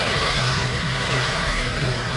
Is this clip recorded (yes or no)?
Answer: no